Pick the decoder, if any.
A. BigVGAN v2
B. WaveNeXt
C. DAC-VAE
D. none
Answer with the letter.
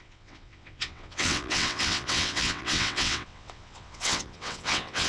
B